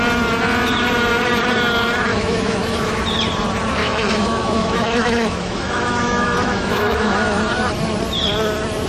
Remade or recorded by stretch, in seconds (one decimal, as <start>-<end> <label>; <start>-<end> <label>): 0.0-2.1 recorded; 2.1-3.0 remade; 3.0-3.8 recorded; 3.8-7.4 remade; 7.4-8.9 recorded